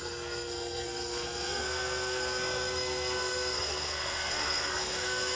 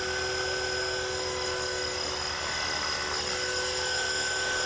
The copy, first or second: first